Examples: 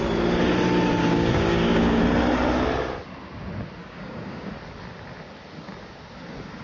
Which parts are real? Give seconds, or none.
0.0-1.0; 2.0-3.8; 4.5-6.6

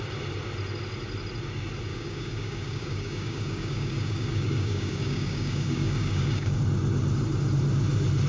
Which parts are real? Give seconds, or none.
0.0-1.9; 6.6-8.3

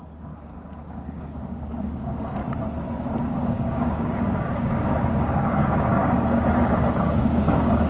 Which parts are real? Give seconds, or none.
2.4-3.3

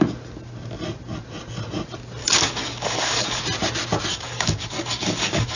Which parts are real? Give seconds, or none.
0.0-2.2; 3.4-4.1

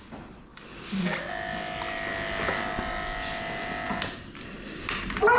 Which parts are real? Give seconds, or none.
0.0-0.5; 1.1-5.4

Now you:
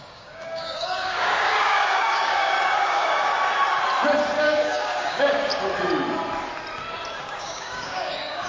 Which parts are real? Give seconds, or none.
3.3-4.4; 5.5-7.2

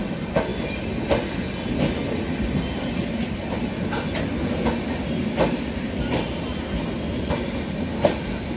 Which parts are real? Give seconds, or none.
0.0-8.6